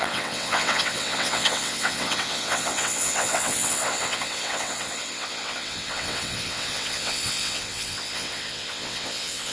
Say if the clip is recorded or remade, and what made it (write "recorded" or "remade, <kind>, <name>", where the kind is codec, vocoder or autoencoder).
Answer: remade, vocoder, WaveNeXt